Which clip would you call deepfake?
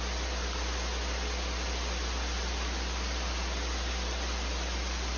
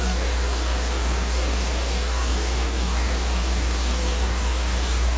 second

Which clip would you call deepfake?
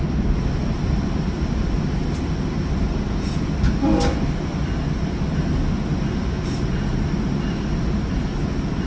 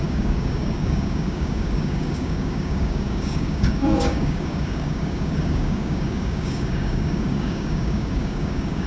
second